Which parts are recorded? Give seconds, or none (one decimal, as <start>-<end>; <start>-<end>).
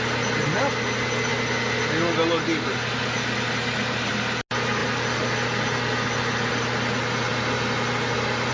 0.0-8.5